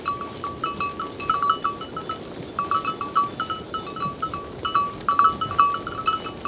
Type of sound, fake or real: real